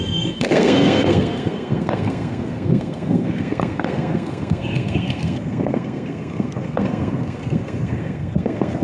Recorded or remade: remade